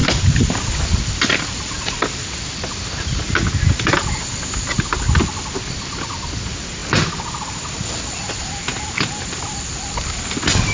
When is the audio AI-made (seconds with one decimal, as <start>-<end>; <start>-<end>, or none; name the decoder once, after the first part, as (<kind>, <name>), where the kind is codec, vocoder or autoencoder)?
none